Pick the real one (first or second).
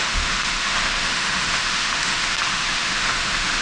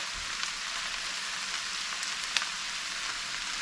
second